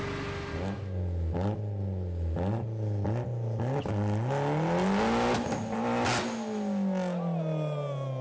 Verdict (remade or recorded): recorded